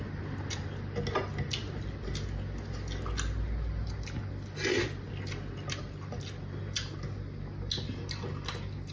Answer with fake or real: real